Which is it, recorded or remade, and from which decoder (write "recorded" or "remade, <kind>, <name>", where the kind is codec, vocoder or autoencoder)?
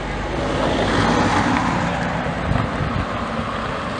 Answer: recorded